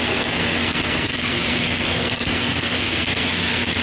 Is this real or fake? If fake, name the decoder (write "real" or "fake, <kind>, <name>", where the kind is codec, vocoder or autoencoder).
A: fake, codec, SNAC